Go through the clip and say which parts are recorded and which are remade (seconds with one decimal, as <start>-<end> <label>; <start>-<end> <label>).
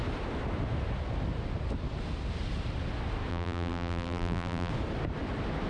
0.0-3.3 recorded; 3.3-4.7 remade; 4.7-5.7 recorded